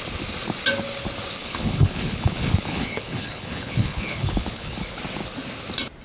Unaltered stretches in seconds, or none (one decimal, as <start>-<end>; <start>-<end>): 0.0-1.4; 5.0-6.0